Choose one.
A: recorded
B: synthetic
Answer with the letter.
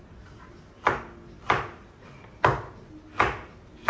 A